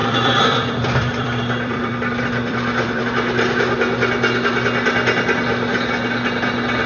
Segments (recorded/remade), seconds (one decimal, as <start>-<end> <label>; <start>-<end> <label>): 0.0-3.0 remade; 3.0-6.9 recorded